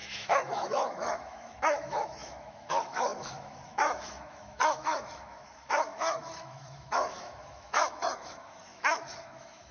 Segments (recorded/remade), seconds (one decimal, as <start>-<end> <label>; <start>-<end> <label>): 0.0-9.7 remade